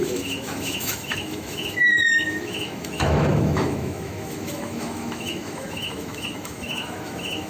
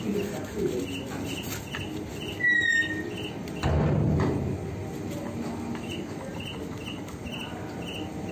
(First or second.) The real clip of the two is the second